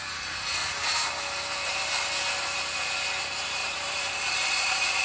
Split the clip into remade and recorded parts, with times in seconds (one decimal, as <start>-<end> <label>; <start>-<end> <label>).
0.0-3.6 recorded; 3.6-5.0 remade